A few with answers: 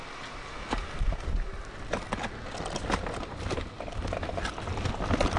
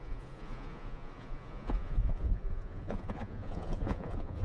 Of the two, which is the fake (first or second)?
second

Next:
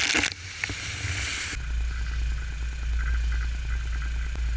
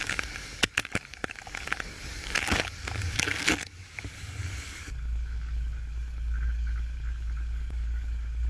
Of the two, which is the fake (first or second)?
second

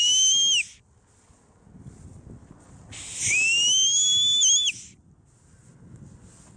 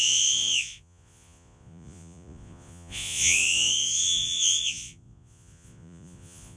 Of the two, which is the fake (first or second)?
second